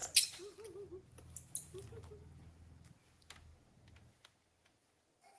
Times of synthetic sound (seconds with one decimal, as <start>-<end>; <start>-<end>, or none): none